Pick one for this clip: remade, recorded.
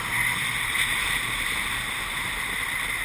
recorded